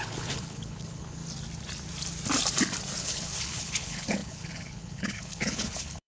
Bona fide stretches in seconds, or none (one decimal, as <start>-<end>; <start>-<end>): 1.2-3.0